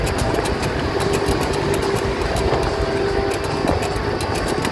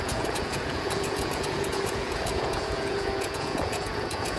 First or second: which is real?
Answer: first